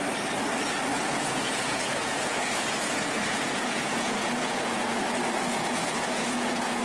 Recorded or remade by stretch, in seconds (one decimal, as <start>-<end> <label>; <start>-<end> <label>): 0.0-0.9 recorded; 0.9-5.0 remade; 5.0-5.5 recorded; 5.5-6.8 remade